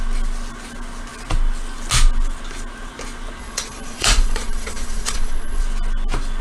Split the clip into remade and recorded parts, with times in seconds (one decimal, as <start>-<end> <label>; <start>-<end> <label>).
0.0-3.4 recorded; 3.4-5.6 remade; 5.6-6.4 recorded